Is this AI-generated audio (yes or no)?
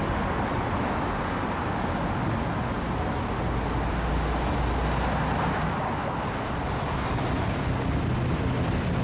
no